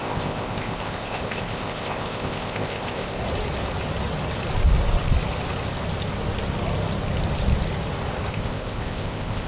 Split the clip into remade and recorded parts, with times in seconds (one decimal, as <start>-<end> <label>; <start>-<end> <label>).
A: 0.0-3.2 remade; 3.2-8.3 recorded; 8.3-9.5 remade